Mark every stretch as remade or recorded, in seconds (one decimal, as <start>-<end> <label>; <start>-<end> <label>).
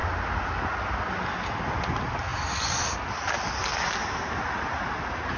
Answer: 0.0-5.4 recorded